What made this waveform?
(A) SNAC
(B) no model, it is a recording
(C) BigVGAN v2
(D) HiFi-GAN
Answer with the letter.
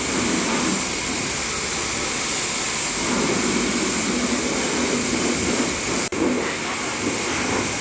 B